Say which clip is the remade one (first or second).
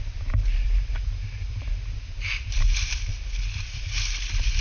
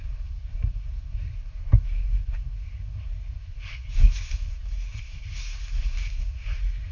second